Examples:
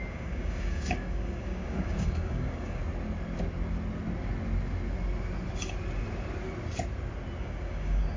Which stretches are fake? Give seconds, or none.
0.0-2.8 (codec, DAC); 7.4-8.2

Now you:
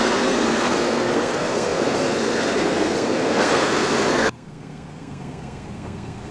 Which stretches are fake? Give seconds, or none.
0.0-6.3 (codec, SNAC)

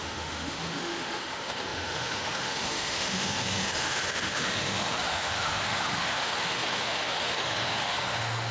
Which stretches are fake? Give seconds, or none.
0.0-8.5 (autoencoder, DAC-VAE)

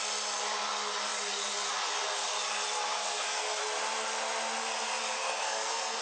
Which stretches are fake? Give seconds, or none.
3.0-3.6 (codec, SNAC); 5.0-6.0

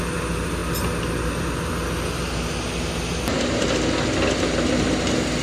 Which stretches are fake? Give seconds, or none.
none

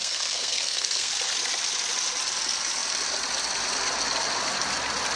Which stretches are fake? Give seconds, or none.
0.0-1.1 (codec, SNAC)

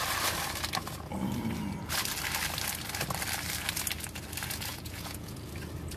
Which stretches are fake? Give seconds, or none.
4.7-5.5 (vocoder, Vocos)

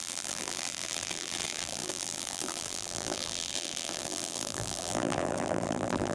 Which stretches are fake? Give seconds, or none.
0.0-6.1 (vocoder, BigVGAN v2)